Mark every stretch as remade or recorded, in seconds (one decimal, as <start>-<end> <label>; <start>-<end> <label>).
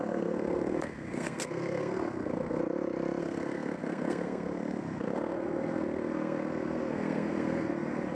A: 0.0-2.6 remade; 2.6-3.2 recorded; 3.2-8.1 remade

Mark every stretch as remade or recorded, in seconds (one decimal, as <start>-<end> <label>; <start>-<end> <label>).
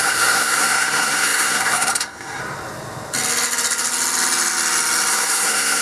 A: 0.0-2.4 remade; 2.4-5.1 recorded; 5.1-5.8 remade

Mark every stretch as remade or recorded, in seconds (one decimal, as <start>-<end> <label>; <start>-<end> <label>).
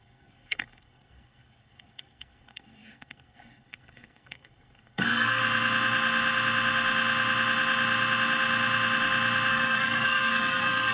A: 0.0-5.4 remade; 5.4-9.5 recorded; 9.5-10.9 remade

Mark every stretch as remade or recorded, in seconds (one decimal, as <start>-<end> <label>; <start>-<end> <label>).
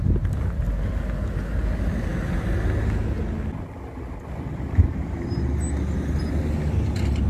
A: 0.0-7.3 recorded